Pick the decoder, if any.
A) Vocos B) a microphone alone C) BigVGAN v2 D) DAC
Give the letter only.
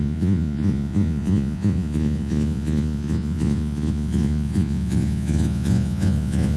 A